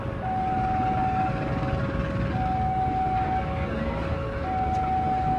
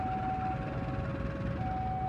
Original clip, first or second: second